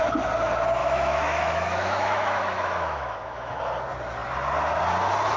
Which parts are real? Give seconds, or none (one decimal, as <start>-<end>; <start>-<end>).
0.0-0.8; 3.6-5.4